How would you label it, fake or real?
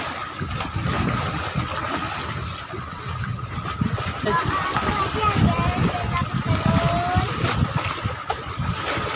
real